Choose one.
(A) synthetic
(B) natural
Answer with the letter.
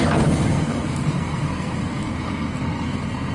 A